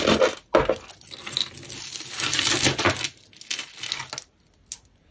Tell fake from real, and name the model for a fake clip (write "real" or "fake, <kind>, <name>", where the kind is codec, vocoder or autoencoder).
real